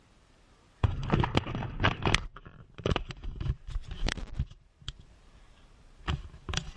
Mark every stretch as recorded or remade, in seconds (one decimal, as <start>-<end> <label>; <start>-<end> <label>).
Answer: 0.0-1.0 remade; 1.0-2.5 recorded; 2.5-6.8 remade